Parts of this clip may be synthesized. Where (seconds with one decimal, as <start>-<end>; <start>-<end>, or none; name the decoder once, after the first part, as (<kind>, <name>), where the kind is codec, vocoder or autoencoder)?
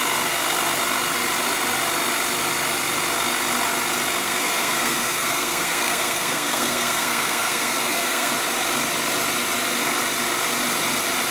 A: 4.2-8.3 (codec, SNAC)